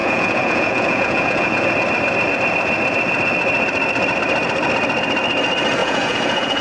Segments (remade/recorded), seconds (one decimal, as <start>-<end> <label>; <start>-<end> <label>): 0.0-1.7 remade; 1.7-5.8 recorded; 5.8-6.6 remade